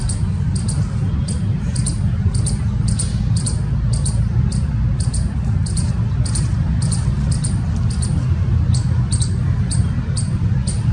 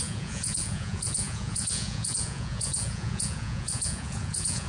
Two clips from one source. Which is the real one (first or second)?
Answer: first